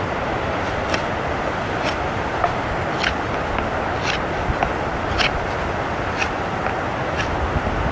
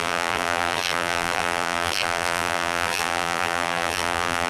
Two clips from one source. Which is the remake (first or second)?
second